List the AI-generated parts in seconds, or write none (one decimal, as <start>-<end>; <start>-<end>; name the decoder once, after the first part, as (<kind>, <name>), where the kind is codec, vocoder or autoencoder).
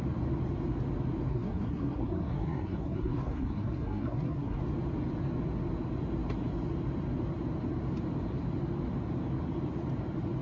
1.3-4.6 (codec, SNAC)